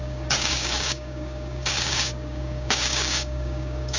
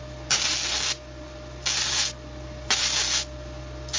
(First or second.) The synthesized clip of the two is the first